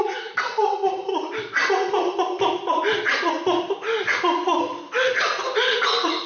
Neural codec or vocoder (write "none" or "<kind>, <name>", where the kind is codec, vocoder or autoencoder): none